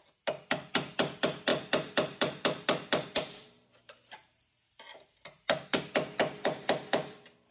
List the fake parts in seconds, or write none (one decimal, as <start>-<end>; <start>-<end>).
1.5-5.8; 6.2-7.5